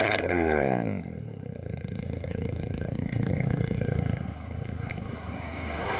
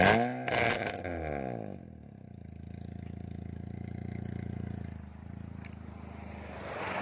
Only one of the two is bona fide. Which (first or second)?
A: second